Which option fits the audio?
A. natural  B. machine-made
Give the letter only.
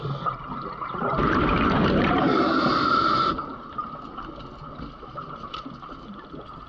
B